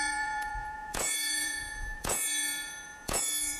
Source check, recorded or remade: remade